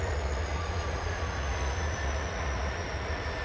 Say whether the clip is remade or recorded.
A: remade